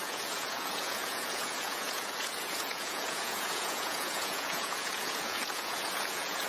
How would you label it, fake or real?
fake